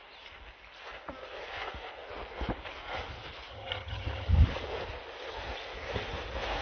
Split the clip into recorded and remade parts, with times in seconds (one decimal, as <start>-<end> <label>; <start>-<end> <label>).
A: 0.0-3.5 recorded; 3.5-4.3 remade; 4.3-6.6 recorded